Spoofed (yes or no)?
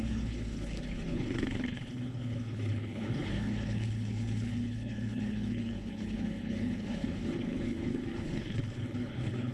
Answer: yes